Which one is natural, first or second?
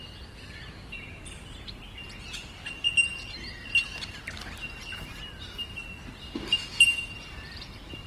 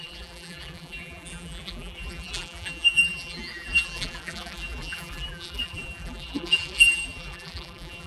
first